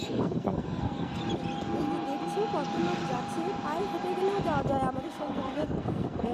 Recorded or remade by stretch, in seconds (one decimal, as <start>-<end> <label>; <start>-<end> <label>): 0.0-1.2 remade; 1.2-5.0 recorded; 5.0-6.3 remade